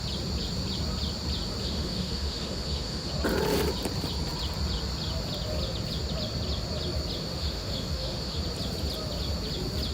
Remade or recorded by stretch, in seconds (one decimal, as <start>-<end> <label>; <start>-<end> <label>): 0.0-1.6 recorded; 1.6-3.1 remade; 3.1-7.2 recorded; 7.2-8.4 remade; 8.4-9.9 recorded